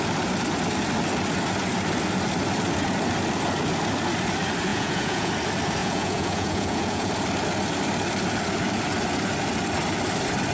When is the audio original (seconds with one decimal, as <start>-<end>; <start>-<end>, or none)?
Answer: 0.0-4.7; 5.3-5.8; 7.1-10.5